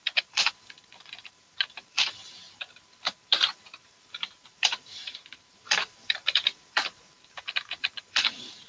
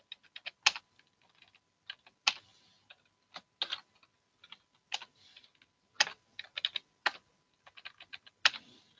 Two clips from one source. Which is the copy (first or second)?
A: first